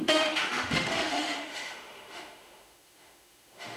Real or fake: fake